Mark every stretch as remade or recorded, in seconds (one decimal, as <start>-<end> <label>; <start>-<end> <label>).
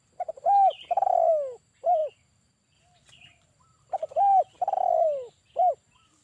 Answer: 0.0-2.0 recorded; 2.0-5.7 remade; 5.7-6.2 recorded